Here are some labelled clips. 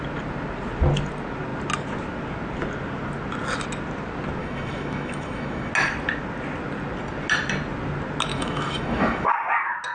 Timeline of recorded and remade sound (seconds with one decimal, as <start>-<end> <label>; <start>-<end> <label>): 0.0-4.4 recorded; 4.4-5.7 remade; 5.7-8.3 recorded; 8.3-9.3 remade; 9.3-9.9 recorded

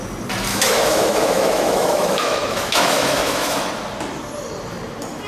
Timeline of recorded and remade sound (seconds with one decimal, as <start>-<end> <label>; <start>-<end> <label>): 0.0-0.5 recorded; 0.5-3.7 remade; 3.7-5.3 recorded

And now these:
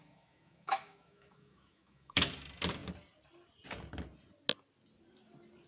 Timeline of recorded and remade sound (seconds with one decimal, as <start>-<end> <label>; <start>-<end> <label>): 0.0-2.3 remade; 2.3-5.7 recorded

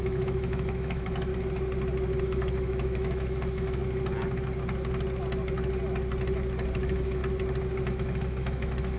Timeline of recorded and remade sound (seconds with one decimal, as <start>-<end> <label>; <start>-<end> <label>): 0.0-1.3 remade; 1.3-2.2 recorded; 2.2-3.8 remade; 3.8-6.8 recorded; 6.8-7.2 remade; 7.2-7.9 recorded; 7.9-9.0 remade

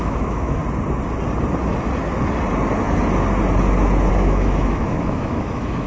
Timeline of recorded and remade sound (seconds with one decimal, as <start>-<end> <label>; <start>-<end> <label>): 0.0-0.6 remade; 0.6-4.1 recorded; 4.1-5.9 remade

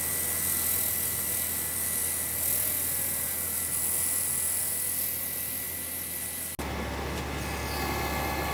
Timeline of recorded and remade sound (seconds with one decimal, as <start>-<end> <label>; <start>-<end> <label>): 0.0-8.5 recorded

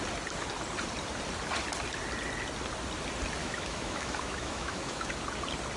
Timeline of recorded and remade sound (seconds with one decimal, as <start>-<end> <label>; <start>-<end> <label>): 0.0-3.4 recorded; 3.4-5.1 remade; 5.1-5.8 recorded